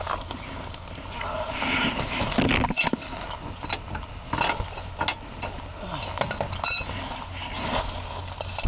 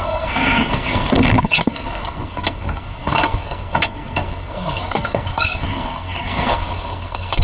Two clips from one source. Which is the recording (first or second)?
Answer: first